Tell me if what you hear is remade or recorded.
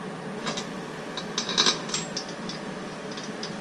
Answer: recorded